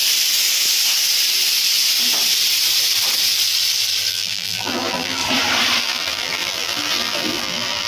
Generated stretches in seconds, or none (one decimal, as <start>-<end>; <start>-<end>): 4.1-5.2; 5.8-7.9